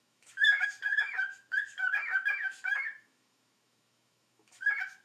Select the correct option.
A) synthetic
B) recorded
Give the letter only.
A